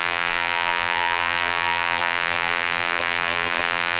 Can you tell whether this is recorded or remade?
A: remade